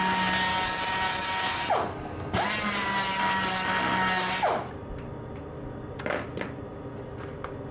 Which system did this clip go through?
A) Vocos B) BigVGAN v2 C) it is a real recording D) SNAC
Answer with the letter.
C